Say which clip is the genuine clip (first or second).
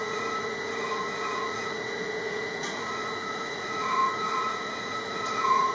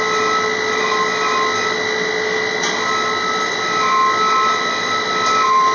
second